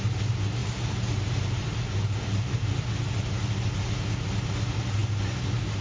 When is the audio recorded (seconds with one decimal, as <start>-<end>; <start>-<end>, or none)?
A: 0.0-5.8